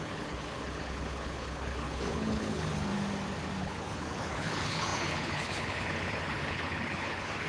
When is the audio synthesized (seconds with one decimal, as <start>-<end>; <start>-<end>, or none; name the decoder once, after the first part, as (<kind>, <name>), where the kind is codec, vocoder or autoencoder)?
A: 0.0-2.9 (codec, HILCodec); 3.6-7.5